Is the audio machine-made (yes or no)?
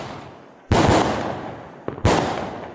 no